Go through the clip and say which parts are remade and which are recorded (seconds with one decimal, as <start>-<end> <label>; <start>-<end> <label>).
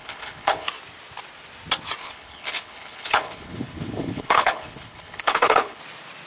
0.0-0.7 remade; 0.7-2.0 recorded; 2.0-5.8 remade; 5.8-6.3 recorded